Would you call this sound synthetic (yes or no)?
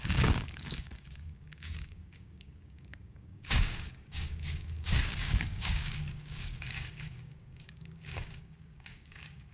yes